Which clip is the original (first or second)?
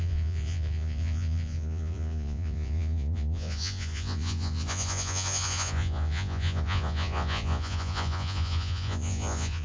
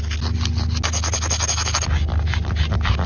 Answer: second